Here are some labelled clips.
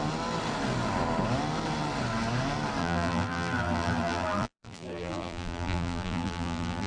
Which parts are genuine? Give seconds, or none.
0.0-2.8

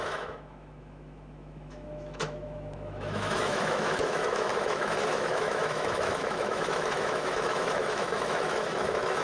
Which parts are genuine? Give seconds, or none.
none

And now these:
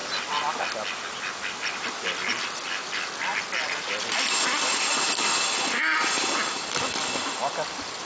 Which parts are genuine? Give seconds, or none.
0.0-8.1

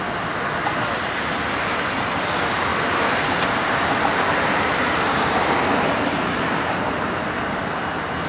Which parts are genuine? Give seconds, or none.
0.0-2.7; 7.7-8.3

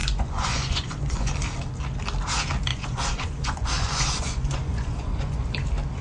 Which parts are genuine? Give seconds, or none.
1.3-2.7; 5.5-6.0

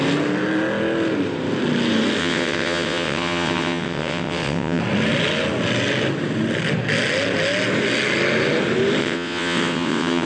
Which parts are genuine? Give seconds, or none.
0.0-2.2; 4.8-9.0

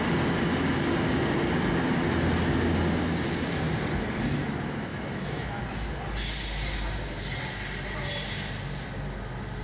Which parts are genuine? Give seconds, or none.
0.0-4.9; 5.6-9.6